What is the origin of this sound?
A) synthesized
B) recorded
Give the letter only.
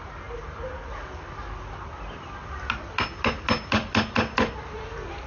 B